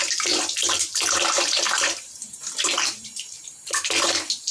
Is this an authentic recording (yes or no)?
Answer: no